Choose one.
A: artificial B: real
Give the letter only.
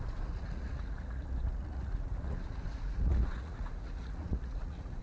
A